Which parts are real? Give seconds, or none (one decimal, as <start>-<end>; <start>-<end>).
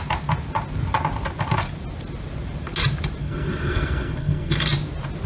0.0-3.2; 4.7-5.3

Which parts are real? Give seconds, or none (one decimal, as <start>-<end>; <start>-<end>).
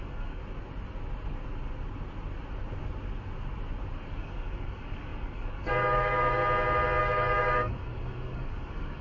0.4-4.1; 6.4-7.0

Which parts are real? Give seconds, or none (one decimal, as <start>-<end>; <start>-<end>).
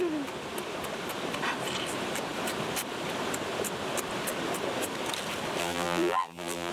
0.0-5.6